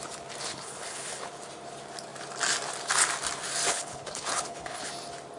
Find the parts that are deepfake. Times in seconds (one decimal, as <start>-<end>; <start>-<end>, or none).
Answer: 0.5-1.2; 3.7-4.9